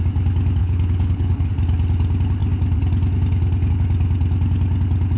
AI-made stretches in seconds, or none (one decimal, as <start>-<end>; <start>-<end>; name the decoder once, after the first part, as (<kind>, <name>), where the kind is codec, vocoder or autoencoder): 0.6-1.5 (codec, HILCodec)